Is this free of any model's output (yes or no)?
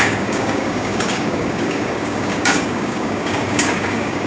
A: no